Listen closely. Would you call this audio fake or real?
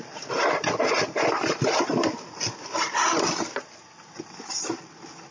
real